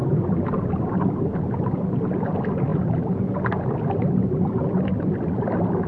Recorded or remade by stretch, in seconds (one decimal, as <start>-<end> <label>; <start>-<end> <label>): 0.0-1.9 remade; 1.9-5.9 recorded